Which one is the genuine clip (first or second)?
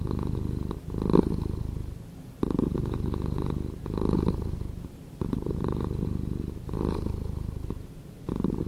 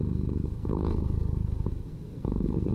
first